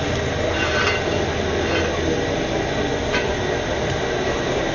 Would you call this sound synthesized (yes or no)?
no